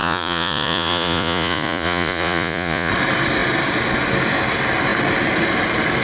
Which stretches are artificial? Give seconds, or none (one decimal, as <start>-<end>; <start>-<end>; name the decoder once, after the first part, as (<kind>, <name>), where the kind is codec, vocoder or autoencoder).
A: 0.0-2.9 (vocoder, Vocos)